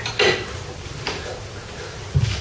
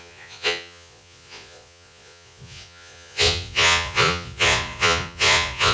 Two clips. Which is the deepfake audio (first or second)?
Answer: second